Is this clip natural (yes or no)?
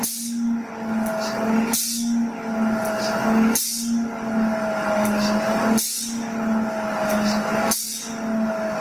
yes